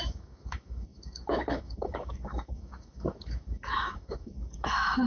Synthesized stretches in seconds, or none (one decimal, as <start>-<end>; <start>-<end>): 0.0-5.1

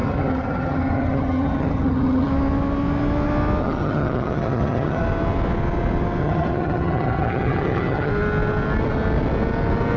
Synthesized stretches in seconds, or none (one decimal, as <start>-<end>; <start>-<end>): 0.0-2.3; 3.6-5.0; 6.2-8.1